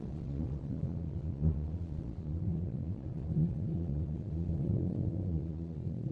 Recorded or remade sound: remade